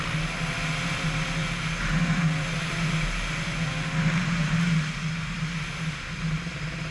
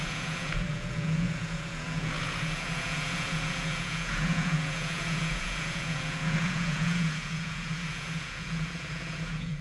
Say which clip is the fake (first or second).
second